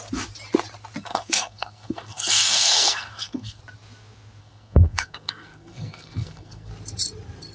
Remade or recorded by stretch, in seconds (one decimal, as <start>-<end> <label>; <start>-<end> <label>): 0.0-1.1 recorded; 1.1-3.6 remade; 3.6-4.4 recorded; 4.4-6.7 remade; 6.7-7.5 recorded